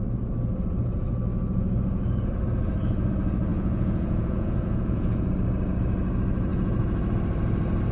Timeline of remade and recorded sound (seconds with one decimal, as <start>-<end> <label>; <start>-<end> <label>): 0.0-3.5 recorded; 3.5-5.3 remade; 5.3-7.9 recorded